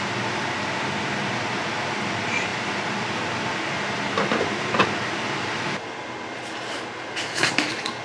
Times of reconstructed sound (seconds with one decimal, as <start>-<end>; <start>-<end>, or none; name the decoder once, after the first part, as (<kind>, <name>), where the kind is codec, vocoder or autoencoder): none